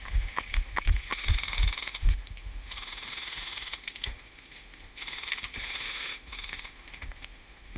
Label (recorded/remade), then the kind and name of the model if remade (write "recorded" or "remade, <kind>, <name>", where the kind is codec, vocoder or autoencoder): remade, autoencoder, DAC-VAE